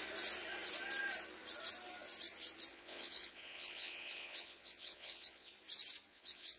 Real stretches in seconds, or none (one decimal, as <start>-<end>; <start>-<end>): 0.0-2.7; 5.5-6.1